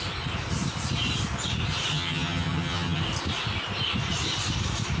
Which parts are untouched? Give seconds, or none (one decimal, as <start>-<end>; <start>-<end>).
0.0-1.9; 3.0-5.0